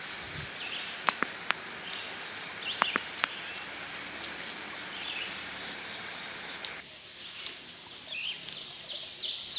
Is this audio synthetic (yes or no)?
no